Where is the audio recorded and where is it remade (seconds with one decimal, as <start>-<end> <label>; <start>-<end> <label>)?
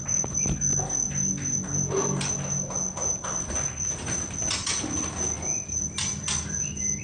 0.0-7.0 recorded